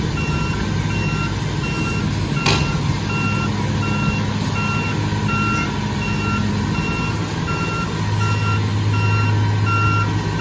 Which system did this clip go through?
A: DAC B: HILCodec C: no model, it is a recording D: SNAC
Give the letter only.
C